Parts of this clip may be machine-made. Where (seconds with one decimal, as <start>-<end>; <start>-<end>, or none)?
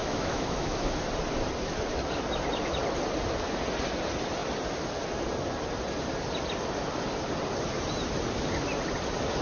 0.0-1.0